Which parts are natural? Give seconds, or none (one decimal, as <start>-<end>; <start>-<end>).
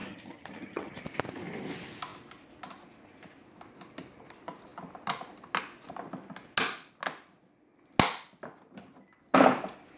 1.0-10.0